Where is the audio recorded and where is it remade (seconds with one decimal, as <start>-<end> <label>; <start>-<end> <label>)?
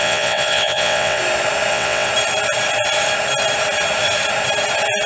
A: 0.0-1.2 remade; 1.2-1.7 recorded; 1.7-2.1 remade; 2.1-5.1 recorded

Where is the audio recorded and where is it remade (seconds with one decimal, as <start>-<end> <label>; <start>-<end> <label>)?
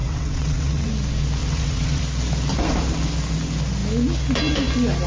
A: 0.0-0.9 remade; 0.9-1.4 recorded; 1.4-2.0 remade; 2.0-5.1 recorded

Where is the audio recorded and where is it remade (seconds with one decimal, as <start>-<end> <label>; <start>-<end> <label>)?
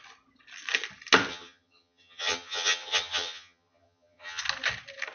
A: 0.0-1.3 recorded; 1.3-4.4 remade; 4.4-5.1 recorded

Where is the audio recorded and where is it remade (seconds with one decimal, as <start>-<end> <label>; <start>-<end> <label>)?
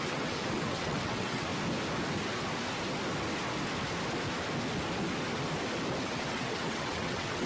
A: 0.0-1.5 remade; 1.5-6.0 recorded; 6.0-7.5 remade